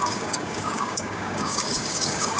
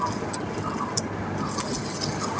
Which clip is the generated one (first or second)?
first